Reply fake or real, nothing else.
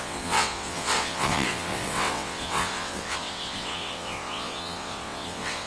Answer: fake